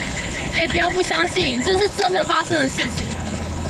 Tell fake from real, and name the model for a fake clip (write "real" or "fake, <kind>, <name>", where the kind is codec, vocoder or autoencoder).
fake, codec, HILCodec